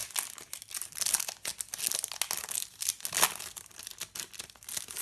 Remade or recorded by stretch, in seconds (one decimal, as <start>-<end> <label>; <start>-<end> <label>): 0.0-5.0 recorded